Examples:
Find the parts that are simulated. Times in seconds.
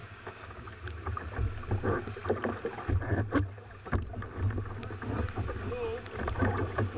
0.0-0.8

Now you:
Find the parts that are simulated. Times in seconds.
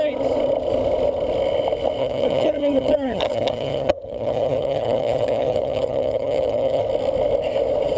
2.0-6.8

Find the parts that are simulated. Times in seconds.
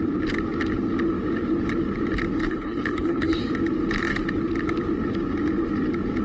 2.4-3.4